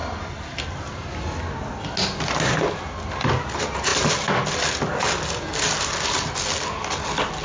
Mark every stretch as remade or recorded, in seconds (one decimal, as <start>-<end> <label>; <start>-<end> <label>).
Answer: 0.0-7.4 recorded